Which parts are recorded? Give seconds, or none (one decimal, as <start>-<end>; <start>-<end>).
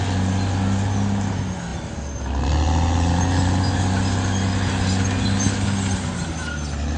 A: 0.0-7.0